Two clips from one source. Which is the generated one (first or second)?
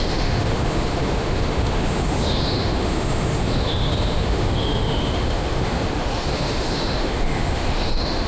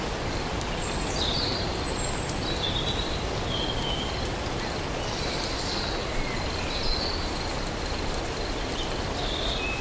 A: first